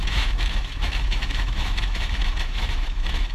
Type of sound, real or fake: fake